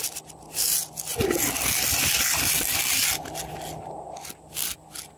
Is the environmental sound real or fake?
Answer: real